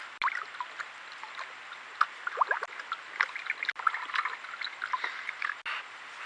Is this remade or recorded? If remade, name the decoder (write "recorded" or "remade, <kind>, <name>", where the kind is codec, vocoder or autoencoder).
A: recorded